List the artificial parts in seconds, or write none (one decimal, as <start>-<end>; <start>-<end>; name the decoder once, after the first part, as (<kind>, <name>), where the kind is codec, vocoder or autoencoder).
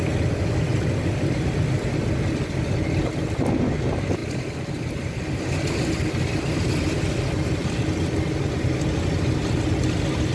none